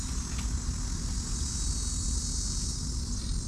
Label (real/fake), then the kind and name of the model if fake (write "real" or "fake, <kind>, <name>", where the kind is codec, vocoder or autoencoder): real